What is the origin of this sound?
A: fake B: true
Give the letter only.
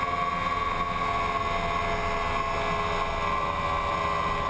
B